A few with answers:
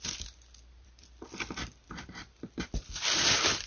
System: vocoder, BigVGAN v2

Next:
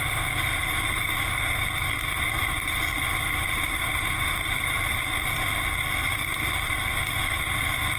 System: autoencoder, DAC-VAE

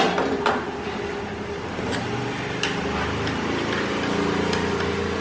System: none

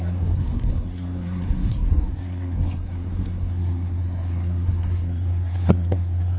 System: codec, SNAC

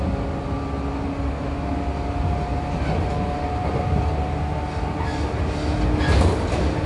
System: none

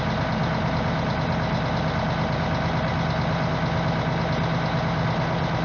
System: none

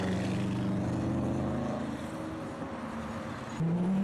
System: none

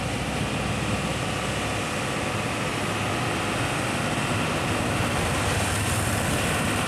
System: none